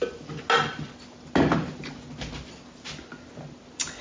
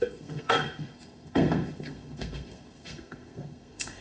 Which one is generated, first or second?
second